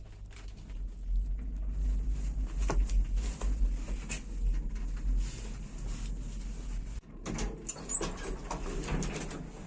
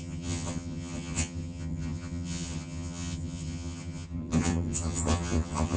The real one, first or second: first